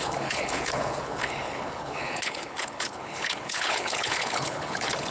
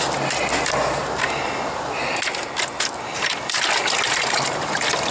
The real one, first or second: second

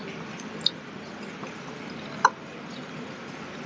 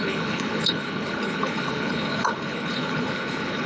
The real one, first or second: first